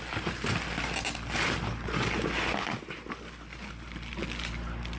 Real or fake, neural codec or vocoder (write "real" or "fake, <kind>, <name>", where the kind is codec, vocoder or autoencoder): real